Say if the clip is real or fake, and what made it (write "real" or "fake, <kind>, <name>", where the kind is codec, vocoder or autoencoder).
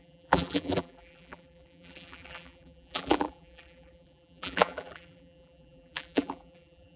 fake, vocoder, BigVGAN v2